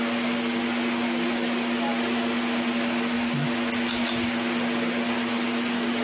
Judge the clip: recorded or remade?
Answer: recorded